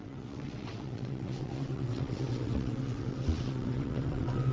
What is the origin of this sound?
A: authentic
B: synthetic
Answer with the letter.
B